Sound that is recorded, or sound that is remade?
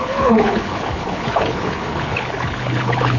remade